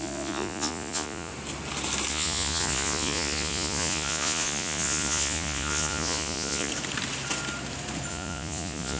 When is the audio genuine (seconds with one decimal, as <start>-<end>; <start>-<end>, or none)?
1.3-2.1; 6.7-8.1